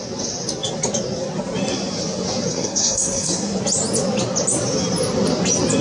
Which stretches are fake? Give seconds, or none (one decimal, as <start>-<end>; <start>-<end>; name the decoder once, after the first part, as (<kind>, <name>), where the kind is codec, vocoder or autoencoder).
2.5-3.6 (codec, SNAC)